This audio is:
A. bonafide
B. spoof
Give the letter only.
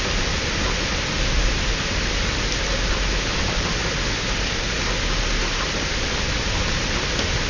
A